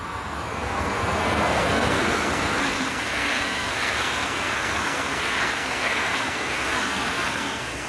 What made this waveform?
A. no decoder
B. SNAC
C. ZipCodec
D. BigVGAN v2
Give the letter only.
B